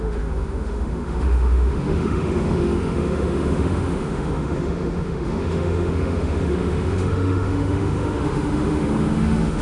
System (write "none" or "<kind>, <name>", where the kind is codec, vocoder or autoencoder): autoencoder, DAC-VAE